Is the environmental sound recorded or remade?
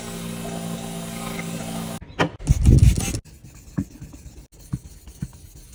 recorded